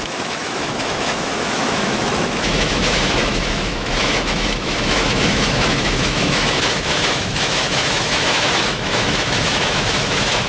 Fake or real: fake